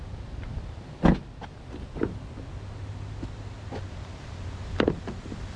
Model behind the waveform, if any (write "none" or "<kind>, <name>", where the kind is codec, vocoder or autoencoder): none